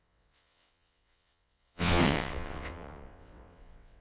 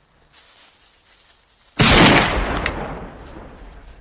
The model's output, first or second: first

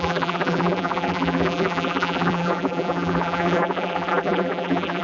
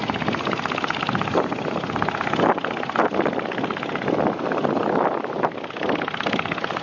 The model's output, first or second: first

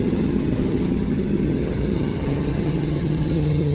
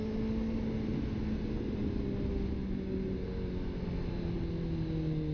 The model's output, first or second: first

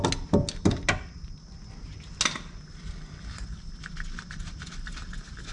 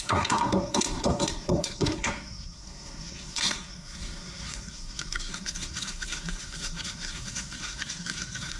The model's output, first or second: second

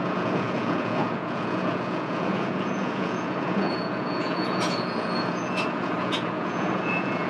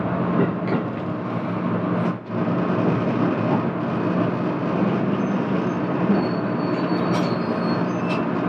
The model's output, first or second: first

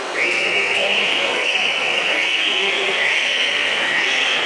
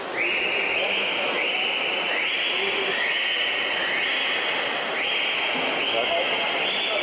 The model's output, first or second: first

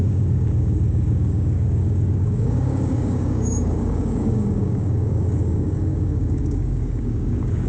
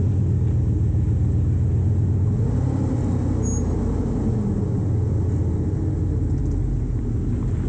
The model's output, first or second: first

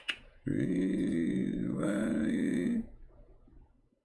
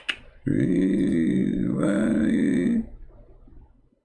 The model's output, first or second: first